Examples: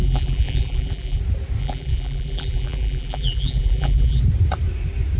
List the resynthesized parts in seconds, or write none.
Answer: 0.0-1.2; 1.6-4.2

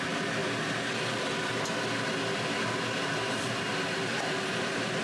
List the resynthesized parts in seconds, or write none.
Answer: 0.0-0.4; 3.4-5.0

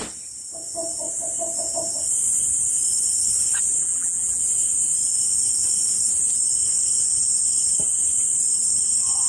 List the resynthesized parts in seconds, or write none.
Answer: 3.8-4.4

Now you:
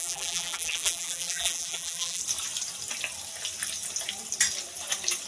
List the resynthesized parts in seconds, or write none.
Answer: 0.0-2.2

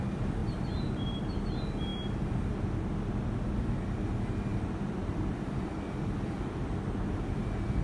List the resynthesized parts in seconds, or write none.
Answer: 0.4-1.2; 4.5-5.7

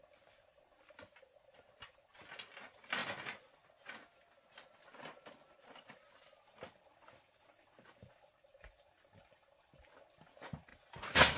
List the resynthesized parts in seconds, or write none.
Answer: none